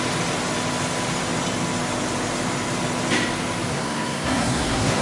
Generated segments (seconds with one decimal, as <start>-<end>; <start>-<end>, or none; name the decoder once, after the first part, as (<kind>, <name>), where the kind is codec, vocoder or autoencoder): 3.7-5.0 (codec, SNAC)